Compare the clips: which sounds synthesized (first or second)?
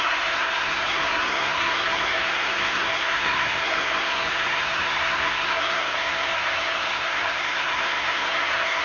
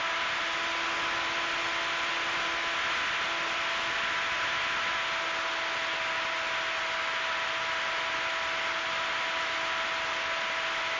first